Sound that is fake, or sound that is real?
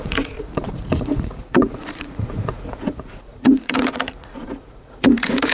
fake